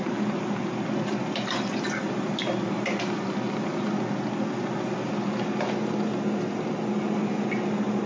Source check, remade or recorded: recorded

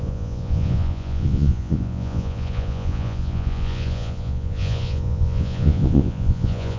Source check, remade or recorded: remade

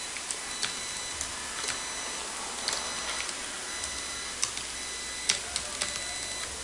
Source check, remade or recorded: recorded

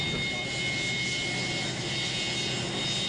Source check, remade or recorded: recorded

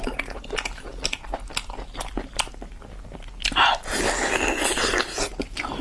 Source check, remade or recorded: recorded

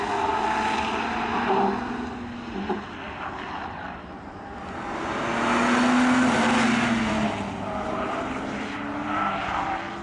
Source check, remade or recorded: recorded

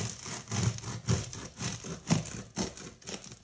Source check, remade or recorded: recorded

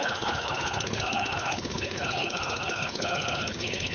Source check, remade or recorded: remade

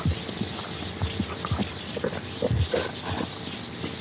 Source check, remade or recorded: recorded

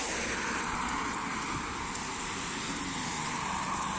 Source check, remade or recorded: recorded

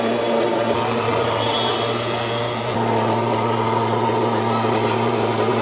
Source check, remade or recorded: recorded